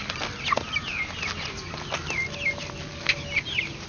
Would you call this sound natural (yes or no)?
yes